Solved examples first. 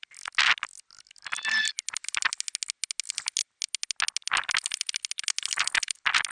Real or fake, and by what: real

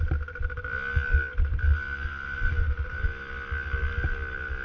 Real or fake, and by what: real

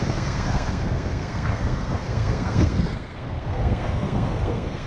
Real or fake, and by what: fake, codec, SNAC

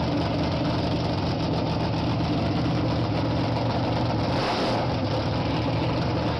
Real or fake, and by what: real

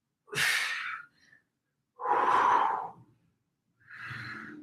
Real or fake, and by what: real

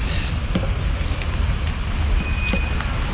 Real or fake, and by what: real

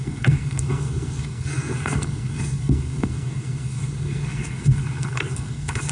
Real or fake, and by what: fake, codec, SNAC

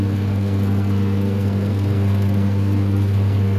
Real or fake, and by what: fake, codec, SNAC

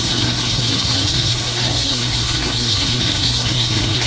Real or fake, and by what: fake, codec, SNAC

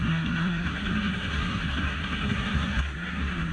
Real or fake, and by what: fake, codec, SNAC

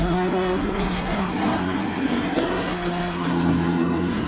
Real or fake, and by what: fake, codec, SNAC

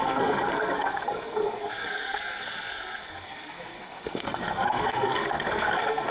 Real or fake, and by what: fake, codec, SNAC